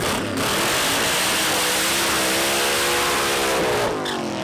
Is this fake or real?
real